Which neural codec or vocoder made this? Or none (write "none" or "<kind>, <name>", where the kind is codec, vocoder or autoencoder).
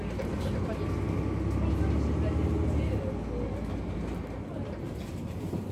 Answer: none